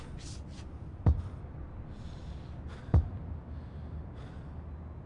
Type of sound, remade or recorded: recorded